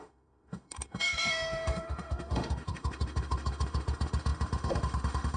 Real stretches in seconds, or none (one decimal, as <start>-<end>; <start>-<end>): none